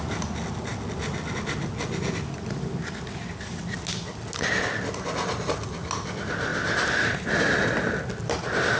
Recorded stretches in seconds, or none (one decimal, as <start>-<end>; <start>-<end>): 0.0-8.8